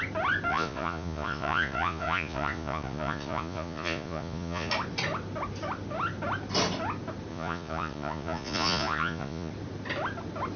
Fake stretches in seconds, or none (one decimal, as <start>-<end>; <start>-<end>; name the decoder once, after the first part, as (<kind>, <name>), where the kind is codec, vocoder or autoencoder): 0.5-4.7 (vocoder, Vocos); 7.3-9.5